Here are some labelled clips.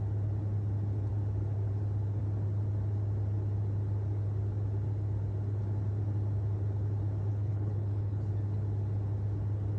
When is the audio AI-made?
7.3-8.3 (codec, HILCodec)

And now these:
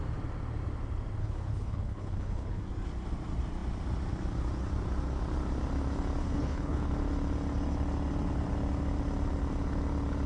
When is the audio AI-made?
1.2-2.6 (codec, HILCodec); 6.2-6.9

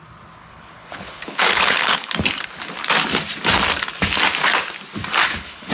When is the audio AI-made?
0.4-2.1 (codec, HILCodec); 5.2-5.7

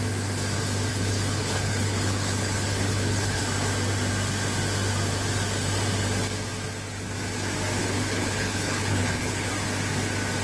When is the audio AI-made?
0.9-3.4 (codec, HILCodec); 7.8-9.5

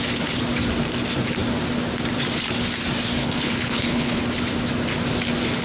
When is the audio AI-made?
3.2-4.2 (codec, HILCodec)